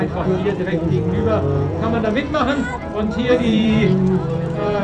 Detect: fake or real fake